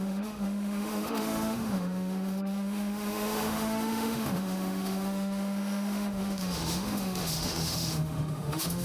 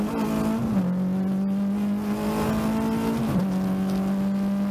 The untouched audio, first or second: second